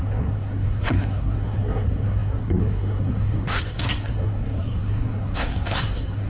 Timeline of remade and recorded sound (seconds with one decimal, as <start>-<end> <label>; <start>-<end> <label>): 0.0-6.3 remade